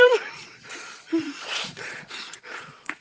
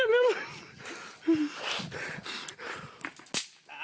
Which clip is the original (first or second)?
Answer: second